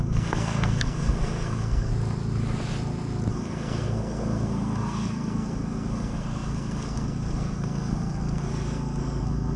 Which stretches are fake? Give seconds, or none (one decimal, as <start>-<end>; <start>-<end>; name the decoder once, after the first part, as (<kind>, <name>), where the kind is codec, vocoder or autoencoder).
0.0-1.9 (codec, SNAC); 3.3-9.6

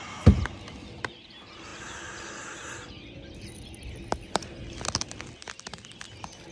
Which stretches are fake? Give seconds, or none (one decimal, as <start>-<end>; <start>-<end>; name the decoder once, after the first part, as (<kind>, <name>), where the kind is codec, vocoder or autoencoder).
none